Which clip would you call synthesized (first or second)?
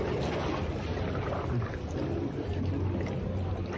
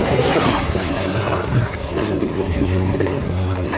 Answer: second